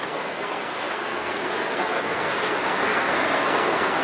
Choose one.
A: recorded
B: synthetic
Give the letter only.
B